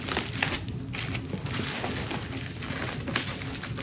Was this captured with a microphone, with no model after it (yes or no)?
yes